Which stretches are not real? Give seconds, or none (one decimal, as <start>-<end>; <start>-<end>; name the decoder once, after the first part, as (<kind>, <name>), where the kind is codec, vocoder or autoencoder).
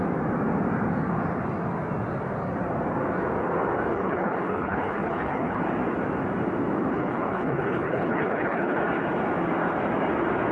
3.9-5.6 (codec, HILCodec); 6.9-8.8